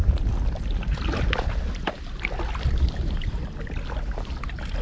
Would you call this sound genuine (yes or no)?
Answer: yes